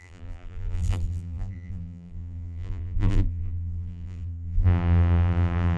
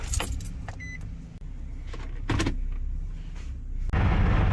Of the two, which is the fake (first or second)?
first